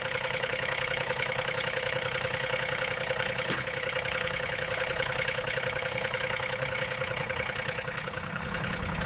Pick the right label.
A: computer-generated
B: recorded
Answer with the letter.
A